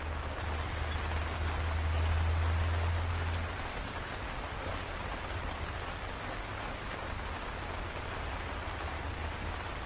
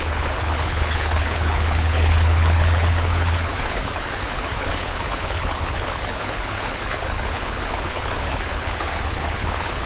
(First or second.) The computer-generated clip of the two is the second